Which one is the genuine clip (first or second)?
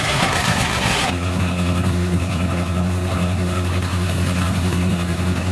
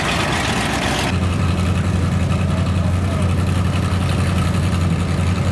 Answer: second